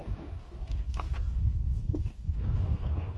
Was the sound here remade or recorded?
remade